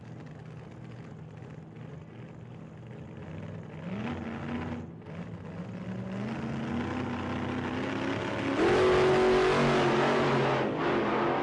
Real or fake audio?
real